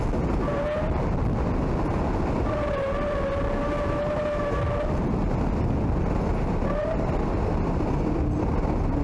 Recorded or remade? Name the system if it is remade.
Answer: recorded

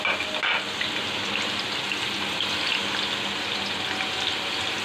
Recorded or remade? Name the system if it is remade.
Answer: recorded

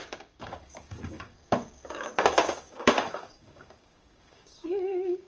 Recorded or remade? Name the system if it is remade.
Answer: remade, codec, DAC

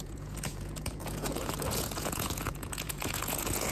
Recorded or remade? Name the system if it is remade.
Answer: remade, vocoder, Vocos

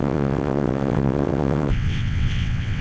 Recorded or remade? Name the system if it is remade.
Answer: remade, vocoder, WaveNeXt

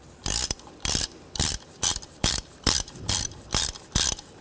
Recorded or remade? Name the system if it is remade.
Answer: remade, vocoder, BigVGAN v2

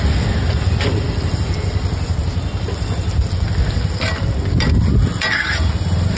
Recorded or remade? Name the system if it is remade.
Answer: recorded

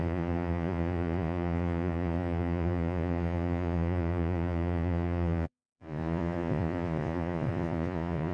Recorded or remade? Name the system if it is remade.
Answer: remade, vocoder, Vocos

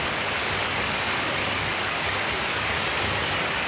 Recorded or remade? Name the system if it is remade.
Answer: remade, codec, DAC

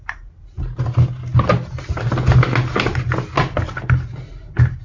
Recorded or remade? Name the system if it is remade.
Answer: recorded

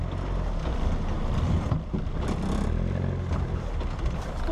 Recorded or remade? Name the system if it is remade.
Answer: recorded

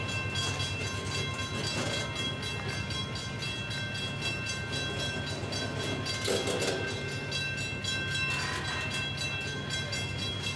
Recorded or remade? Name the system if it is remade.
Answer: recorded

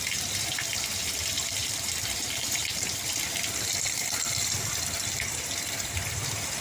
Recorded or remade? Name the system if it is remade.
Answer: remade, vocoder, BigVGAN v2